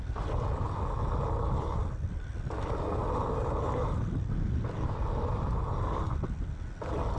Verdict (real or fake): real